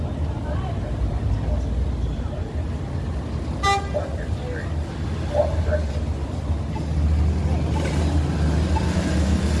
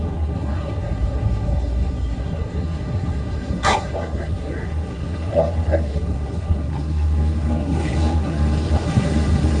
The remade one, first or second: second